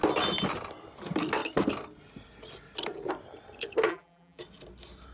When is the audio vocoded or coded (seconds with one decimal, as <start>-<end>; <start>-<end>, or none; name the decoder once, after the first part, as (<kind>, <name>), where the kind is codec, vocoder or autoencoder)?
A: 3.9-4.4 (vocoder, BigVGAN v2)